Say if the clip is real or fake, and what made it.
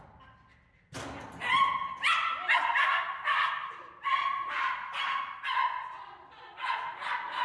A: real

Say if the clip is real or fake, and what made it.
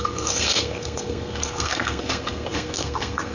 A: fake, codec, SNAC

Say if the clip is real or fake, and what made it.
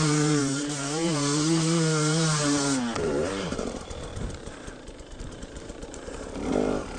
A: fake, vocoder, BigVGAN v2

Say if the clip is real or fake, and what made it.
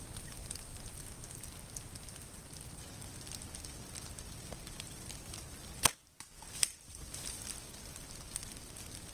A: real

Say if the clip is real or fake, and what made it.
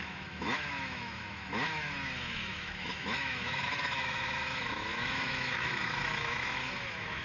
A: fake, autoencoder, DAC-VAE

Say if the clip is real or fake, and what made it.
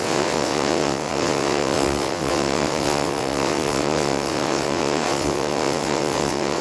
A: fake, vocoder, WaveNeXt